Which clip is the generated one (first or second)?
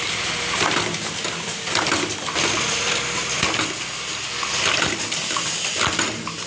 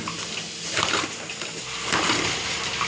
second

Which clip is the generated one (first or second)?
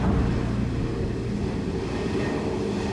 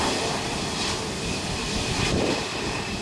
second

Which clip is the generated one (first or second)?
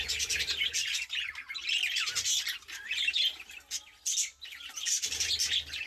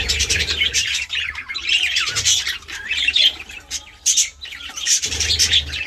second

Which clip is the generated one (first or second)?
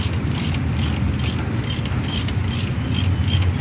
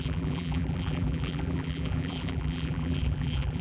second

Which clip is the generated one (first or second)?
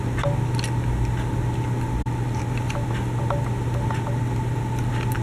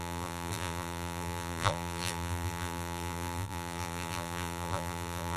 second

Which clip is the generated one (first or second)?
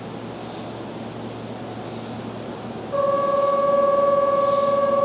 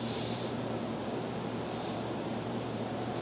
second